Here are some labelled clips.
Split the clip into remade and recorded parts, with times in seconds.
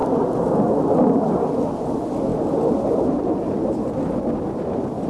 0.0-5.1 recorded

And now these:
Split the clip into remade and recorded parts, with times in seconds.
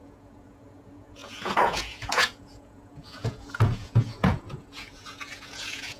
0.0-6.0 remade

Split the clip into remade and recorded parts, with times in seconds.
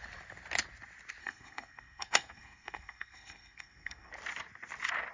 0.0-1.2 recorded; 1.2-4.1 remade; 4.1-5.1 recorded